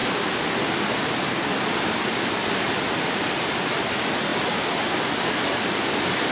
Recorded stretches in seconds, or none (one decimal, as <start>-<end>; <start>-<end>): 0.0-6.3